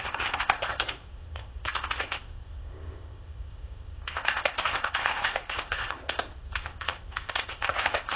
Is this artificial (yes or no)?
yes